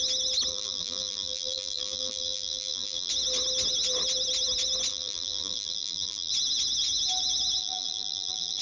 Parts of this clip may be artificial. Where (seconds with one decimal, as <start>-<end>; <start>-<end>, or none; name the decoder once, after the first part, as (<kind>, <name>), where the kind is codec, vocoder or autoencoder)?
0.5-3.1 (vocoder, BigVGAN v2); 4.9-6.3; 7.6-8.6